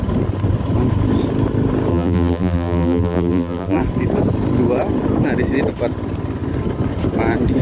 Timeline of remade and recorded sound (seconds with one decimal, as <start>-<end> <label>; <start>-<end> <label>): 0.0-1.9 recorded; 1.9-3.8 remade; 3.8-7.6 recorded